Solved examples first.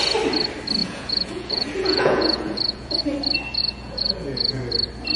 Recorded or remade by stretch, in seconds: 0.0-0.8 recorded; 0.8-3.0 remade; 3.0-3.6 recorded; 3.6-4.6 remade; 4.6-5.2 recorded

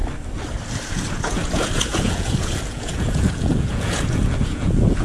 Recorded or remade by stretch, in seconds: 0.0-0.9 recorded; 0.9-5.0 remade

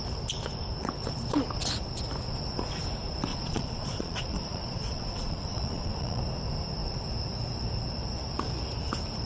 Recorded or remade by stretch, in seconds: 0.0-3.3 recorded; 3.3-6.2 remade; 6.2-9.3 recorded

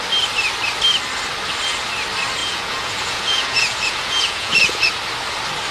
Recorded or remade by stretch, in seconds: 0.0-2.4 recorded; 2.4-4.9 remade; 4.9-5.7 recorded

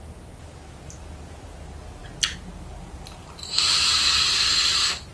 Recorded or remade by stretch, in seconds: 0.0-5.1 recorded

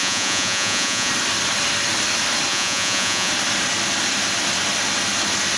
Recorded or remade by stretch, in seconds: 0.0-1.1 remade; 1.1-2.5 recorded; 2.5-3.3 remade; 3.3-5.6 recorded